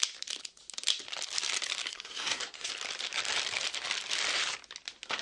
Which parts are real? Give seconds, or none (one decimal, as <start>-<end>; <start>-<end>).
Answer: 0.0-1.9; 2.7-5.2